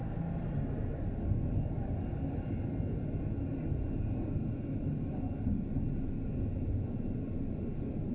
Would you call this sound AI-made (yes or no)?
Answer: no